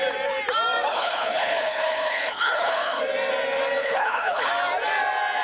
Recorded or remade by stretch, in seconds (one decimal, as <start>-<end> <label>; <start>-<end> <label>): 0.0-0.9 recorded; 0.9-3.0 remade; 3.0-3.8 recorded; 3.8-4.5 remade; 4.5-5.4 recorded